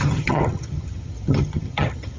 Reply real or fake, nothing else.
fake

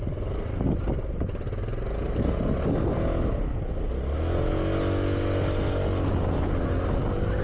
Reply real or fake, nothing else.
real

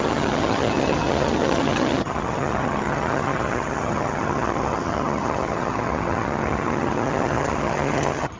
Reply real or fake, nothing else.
fake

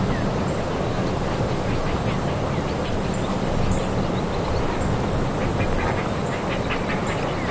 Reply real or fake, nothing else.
real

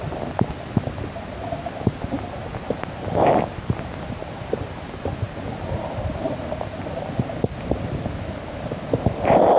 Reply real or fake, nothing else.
real